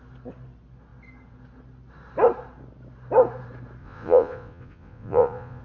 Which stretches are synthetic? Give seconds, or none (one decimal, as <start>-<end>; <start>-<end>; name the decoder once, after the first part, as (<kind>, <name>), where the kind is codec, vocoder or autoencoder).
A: 3.8-5.6 (vocoder, Vocos)